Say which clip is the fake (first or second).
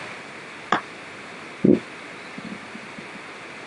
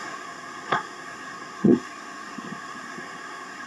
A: second